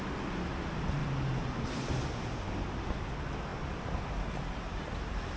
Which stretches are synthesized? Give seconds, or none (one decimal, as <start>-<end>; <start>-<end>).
none

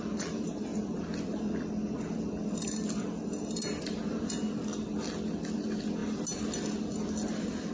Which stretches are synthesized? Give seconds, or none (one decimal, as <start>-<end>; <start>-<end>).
none

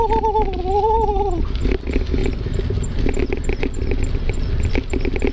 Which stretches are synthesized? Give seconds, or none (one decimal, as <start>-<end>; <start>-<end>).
none

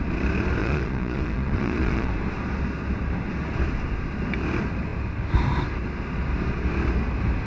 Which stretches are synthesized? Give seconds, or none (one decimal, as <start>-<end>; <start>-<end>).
0.6-2.1

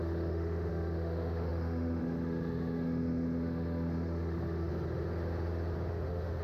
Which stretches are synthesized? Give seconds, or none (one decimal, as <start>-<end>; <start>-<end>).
0.0-4.7; 5.9-6.4

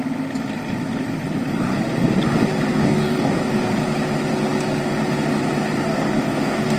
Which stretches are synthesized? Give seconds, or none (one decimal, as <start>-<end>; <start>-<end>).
2.7-3.7; 5.9-6.8

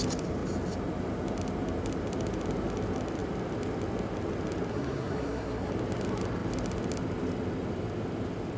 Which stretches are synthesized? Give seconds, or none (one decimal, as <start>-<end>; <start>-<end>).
4.7-5.7

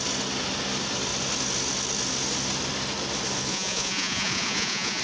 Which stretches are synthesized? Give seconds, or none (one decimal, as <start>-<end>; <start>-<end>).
3.5-5.0